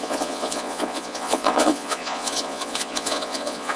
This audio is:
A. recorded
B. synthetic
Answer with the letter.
B